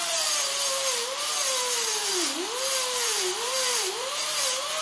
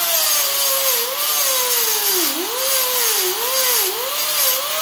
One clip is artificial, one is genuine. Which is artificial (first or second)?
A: first